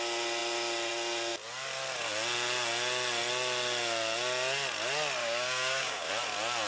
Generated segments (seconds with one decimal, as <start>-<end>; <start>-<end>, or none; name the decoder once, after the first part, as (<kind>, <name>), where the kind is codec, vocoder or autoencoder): 5.2-6.1 (codec, DAC)